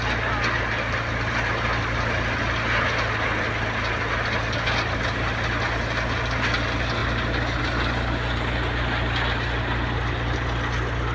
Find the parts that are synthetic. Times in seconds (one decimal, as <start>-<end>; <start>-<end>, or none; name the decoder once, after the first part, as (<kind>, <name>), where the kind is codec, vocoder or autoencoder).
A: none